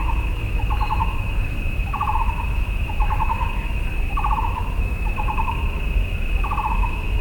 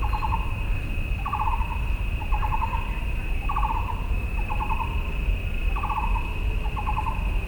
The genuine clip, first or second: second